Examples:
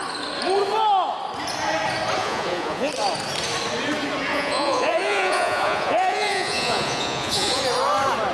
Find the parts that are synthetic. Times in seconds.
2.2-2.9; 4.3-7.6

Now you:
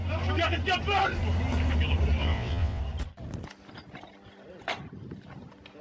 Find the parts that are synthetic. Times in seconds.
2.2-2.8

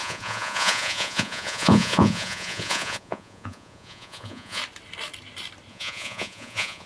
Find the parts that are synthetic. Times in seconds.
0.0-4.6; 5.7-6.9